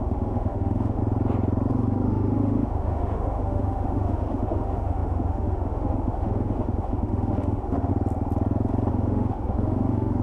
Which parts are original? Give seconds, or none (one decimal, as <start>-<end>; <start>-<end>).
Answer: 1.0-1.7; 7.9-8.9